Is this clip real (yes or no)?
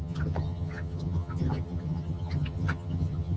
no